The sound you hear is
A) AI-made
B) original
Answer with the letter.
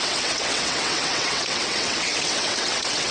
A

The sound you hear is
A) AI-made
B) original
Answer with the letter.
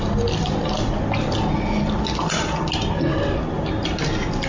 B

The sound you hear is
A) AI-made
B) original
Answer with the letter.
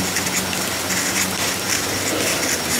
B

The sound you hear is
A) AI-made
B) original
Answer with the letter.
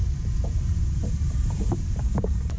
A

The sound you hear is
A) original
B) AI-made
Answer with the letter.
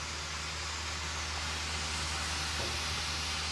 A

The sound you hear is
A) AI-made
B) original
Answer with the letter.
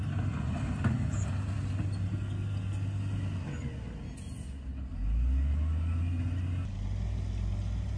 B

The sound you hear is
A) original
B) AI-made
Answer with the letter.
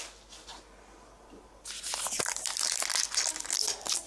A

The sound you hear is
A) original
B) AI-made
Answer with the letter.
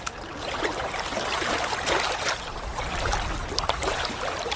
A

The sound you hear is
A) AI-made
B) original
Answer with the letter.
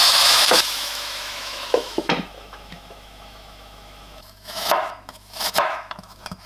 A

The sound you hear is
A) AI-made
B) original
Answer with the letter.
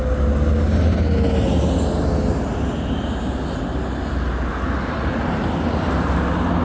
B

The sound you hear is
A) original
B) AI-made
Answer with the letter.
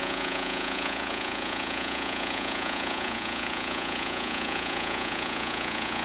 B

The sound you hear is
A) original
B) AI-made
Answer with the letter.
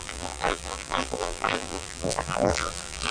B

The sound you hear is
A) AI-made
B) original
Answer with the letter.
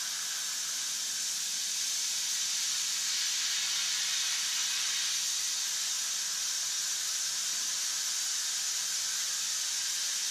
B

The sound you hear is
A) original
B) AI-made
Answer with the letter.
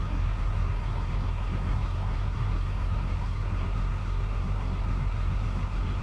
B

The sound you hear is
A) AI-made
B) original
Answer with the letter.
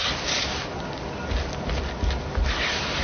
B